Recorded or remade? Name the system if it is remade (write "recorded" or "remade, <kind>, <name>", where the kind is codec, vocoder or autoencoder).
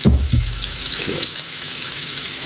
remade, autoencoder, DAC-VAE